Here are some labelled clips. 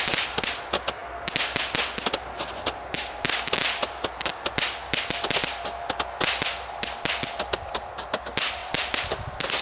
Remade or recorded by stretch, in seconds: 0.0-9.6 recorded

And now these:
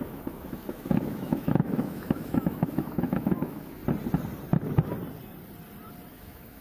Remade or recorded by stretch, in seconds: 0.0-3.8 remade; 3.8-6.1 recorded; 6.1-6.6 remade

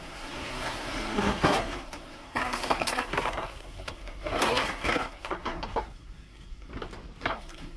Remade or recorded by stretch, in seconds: 0.0-6.7 remade; 6.7-7.2 recorded; 7.2-7.8 remade

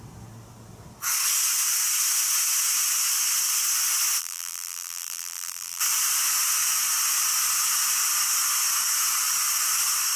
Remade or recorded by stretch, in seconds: 0.0-4.2 recorded; 4.2-5.8 remade; 5.8-10.2 recorded

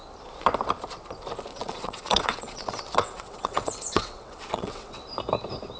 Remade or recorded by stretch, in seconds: 0.0-1.5 recorded; 1.5-5.0 remade; 5.0-5.8 recorded

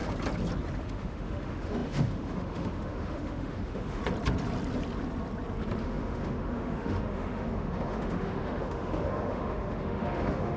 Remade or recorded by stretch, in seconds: 0.0-0.8 recorded; 0.8-4.0 remade; 4.0-5.8 recorded; 5.8-10.6 remade

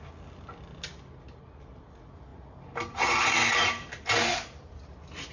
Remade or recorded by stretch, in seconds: 0.0-5.3 recorded